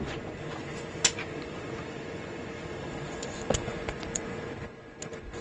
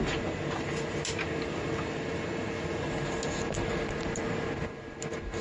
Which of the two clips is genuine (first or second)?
second